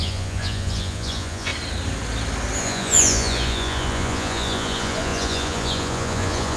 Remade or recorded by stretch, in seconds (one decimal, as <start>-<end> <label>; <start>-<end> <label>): 0.0-1.5 remade; 1.5-2.6 recorded; 2.6-6.6 remade

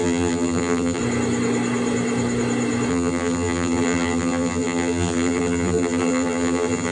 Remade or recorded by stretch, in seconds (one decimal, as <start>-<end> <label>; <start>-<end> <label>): 0.0-1.0 remade; 1.0-2.9 recorded; 2.9-6.9 remade

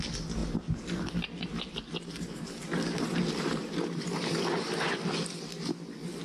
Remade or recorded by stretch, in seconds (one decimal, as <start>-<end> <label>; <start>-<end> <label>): 0.0-0.4 recorded; 0.4-4.1 remade; 4.1-6.2 recorded